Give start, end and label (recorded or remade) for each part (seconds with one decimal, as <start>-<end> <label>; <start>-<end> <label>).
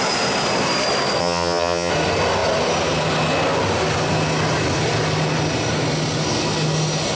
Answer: 0.0-1.2 recorded; 1.2-1.9 remade; 1.9-7.1 recorded